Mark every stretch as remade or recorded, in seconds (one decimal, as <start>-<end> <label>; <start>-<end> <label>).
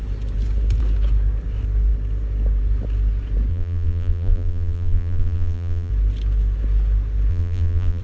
0.0-3.5 recorded; 3.5-5.9 remade; 5.9-7.3 recorded; 7.3-8.0 remade